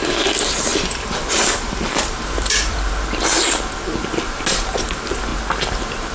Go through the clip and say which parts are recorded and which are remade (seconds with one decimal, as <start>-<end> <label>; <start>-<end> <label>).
0.0-0.7 recorded; 0.7-2.9 remade; 2.9-6.1 recorded